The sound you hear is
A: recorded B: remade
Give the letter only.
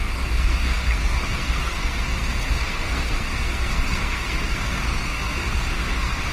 B